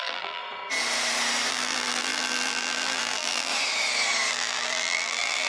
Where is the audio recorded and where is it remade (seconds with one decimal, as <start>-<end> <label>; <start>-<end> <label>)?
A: 0.0-0.4 remade; 0.4-1.5 recorded; 1.5-3.5 remade; 3.5-4.3 recorded; 4.3-5.5 remade